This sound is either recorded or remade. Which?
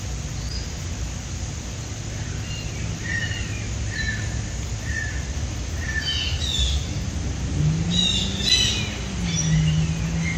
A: recorded